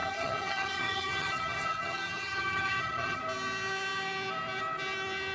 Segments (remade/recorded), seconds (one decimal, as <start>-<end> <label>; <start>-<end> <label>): 0.0-3.2 remade; 3.2-5.3 recorded